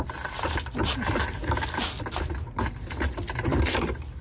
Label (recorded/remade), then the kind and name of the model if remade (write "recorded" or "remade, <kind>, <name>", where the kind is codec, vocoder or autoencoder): recorded